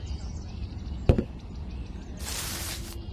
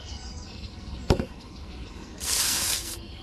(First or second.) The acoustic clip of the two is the first